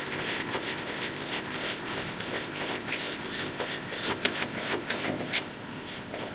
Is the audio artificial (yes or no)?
yes